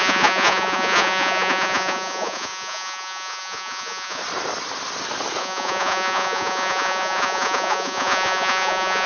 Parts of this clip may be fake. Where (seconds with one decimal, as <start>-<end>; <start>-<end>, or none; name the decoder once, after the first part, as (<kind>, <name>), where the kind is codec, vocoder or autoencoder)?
0.0-4.2 (vocoder, Vocos); 5.4-9.1